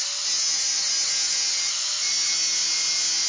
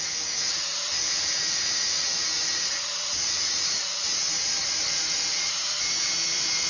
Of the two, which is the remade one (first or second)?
second